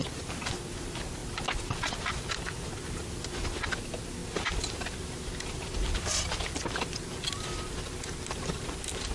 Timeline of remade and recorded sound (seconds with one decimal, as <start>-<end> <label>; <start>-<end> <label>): 0.0-9.1 recorded